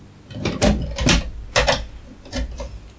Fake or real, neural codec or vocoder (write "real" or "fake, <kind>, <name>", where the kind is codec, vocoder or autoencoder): real